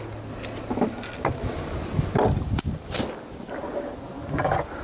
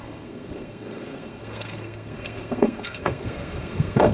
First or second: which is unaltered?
first